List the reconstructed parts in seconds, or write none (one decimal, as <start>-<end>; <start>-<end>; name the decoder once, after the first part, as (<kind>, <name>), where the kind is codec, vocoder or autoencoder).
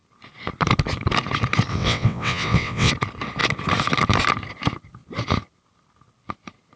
1.7-2.9 (vocoder, WaveNeXt)